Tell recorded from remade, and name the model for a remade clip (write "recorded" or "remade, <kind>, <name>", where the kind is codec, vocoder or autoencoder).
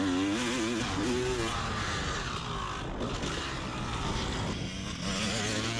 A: recorded